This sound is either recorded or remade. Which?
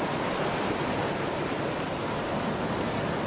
recorded